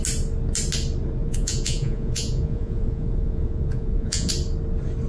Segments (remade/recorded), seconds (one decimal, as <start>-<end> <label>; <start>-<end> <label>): 0.0-1.2 recorded; 1.2-4.3 remade; 4.3-5.1 recorded